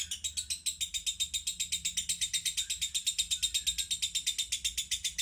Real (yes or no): yes